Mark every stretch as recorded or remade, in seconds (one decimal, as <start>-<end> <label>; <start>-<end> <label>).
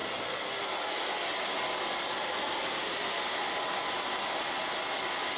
0.0-5.4 recorded